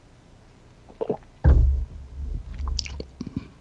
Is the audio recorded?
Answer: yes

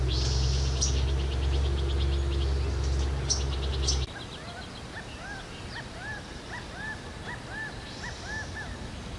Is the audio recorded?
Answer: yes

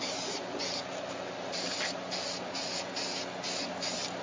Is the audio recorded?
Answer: yes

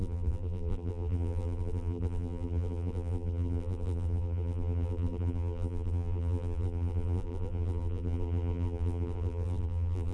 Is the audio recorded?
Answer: no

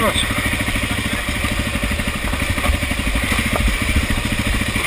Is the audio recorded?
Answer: yes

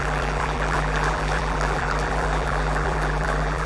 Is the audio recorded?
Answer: no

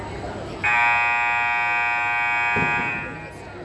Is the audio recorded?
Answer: yes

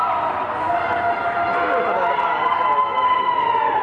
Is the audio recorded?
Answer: no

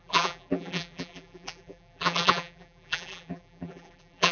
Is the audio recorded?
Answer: no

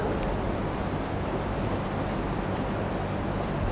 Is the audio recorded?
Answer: yes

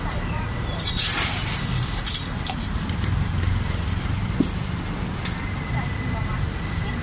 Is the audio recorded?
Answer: no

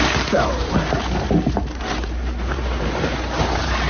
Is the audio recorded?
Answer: no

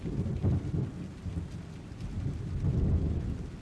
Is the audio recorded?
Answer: yes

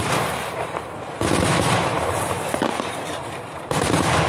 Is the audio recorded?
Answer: no